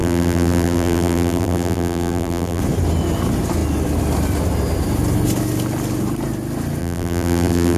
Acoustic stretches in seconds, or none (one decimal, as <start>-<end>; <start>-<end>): 2.6-6.8